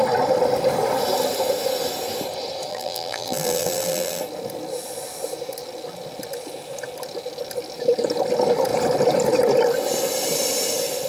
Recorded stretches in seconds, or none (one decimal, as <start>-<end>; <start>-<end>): 0.0-2.7; 4.2-11.1